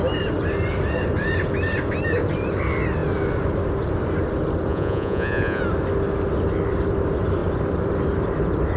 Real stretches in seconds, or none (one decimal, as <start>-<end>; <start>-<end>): 0.0-4.7; 5.6-8.8